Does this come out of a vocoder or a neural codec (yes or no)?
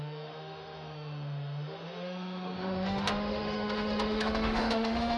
yes